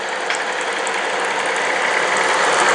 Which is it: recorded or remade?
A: recorded